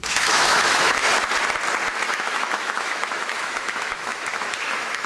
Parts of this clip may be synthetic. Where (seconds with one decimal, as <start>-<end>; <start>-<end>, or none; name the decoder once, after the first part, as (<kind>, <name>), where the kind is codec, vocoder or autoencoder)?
0.0-1.1 (autoencoder, DAC-VAE); 2.1-5.1